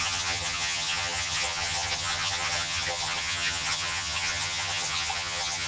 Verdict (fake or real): fake